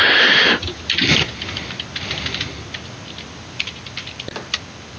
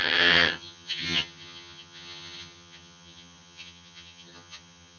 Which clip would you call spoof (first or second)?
second